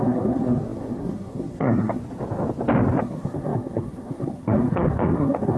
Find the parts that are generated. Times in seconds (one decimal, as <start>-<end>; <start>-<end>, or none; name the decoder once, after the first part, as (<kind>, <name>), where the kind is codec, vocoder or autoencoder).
0.0-2.0 (codec, SNAC); 3.0-5.6